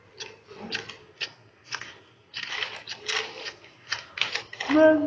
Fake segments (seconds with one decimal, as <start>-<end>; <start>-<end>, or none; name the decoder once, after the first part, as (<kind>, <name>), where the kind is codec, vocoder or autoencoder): 1.0-2.5 (codec, SNAC); 3.4-4.3